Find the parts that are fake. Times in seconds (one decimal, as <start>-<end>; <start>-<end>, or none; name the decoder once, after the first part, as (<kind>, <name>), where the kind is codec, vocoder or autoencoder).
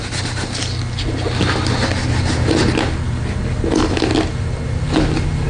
none